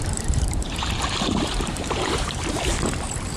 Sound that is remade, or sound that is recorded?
remade